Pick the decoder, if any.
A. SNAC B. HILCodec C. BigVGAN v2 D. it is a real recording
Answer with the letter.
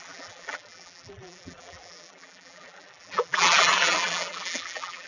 C